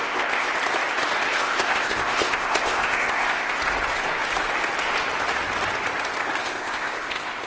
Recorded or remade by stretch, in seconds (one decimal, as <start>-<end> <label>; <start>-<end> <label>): 0.0-0.5 remade; 0.5-1.3 recorded; 1.3-3.6 remade; 3.6-6.4 recorded; 6.4-7.5 remade